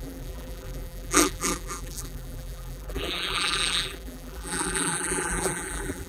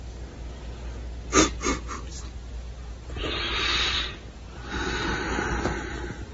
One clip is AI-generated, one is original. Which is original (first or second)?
second